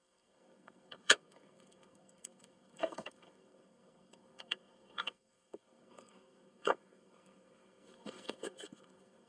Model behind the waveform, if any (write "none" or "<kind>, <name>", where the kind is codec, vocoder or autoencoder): codec, SNAC